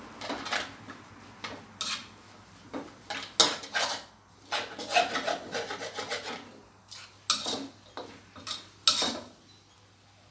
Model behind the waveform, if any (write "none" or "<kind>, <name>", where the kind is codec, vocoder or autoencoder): none